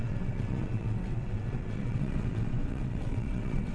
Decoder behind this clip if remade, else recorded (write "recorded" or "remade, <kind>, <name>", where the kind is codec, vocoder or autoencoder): remade, vocoder, WaveNeXt